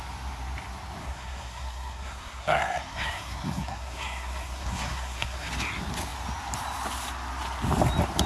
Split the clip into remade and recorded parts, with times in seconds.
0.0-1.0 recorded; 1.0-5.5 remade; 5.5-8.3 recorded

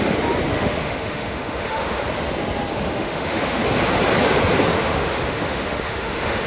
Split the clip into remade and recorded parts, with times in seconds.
0.0-0.5 recorded; 0.5-2.0 remade; 2.0-2.7 recorded; 2.7-3.6 remade; 3.6-4.7 recorded; 4.7-6.5 remade

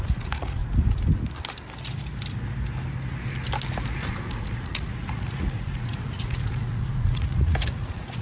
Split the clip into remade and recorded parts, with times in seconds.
0.0-0.6 remade; 0.6-4.0 recorded; 4.0-8.2 remade

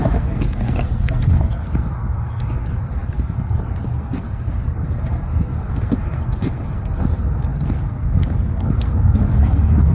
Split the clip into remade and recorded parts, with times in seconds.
0.0-9.9 remade

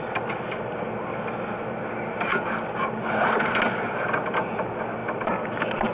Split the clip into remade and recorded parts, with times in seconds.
0.0-5.9 recorded